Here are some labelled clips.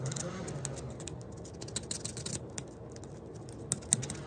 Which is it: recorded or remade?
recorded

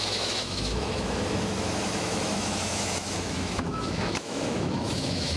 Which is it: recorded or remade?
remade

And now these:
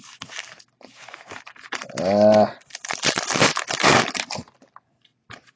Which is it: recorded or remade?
recorded